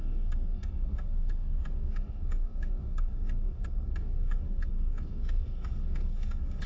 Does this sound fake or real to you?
fake